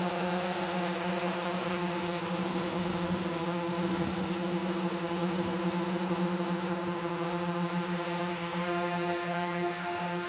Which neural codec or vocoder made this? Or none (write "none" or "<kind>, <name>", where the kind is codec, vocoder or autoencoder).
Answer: autoencoder, DAC-VAE